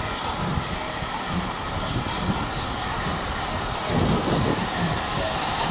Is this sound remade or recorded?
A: recorded